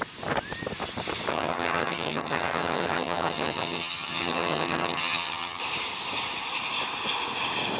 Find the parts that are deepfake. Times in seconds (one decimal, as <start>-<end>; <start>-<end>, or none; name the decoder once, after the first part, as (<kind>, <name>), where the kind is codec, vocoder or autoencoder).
1.3-5.6 (vocoder, HiFi-GAN)